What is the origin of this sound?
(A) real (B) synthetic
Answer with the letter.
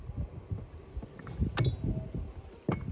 A